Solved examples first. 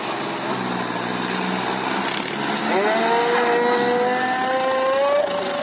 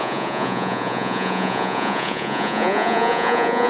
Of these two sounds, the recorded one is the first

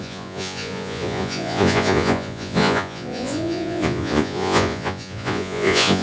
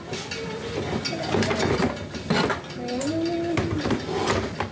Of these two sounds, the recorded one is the second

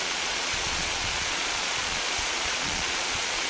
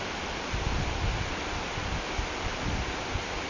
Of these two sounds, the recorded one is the second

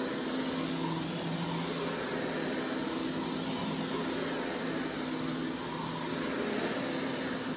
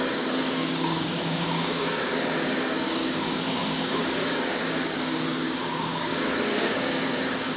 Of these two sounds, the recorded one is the first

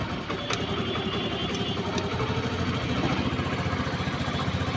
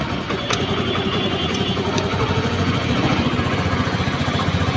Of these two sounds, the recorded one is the first